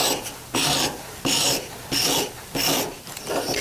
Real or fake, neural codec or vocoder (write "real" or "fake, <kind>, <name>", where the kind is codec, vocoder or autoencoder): real